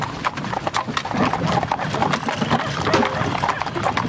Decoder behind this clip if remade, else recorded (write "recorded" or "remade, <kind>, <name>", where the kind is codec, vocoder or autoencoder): recorded